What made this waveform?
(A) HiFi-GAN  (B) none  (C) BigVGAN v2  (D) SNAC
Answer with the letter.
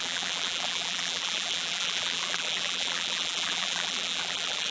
C